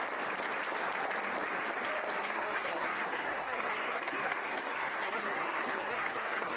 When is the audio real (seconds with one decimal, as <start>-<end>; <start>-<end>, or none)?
0.0-2.2